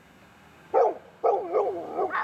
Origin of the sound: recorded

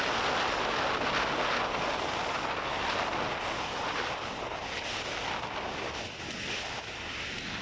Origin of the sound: recorded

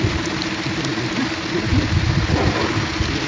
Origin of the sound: recorded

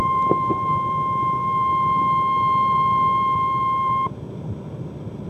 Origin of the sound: recorded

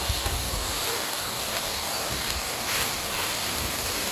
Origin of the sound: remade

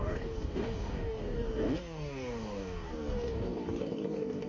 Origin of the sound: remade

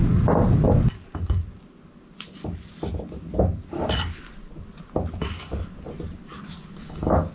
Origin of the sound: recorded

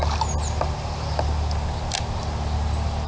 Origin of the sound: recorded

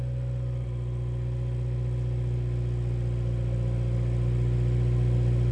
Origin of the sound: recorded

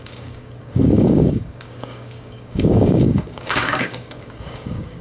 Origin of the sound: remade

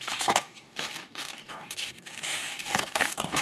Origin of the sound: remade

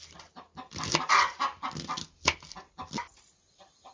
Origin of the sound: recorded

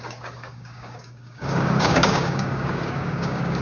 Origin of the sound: remade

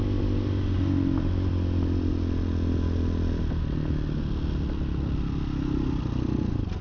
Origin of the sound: recorded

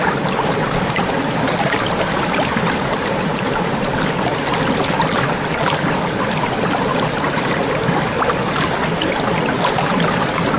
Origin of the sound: recorded